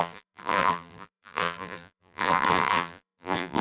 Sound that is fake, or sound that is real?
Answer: fake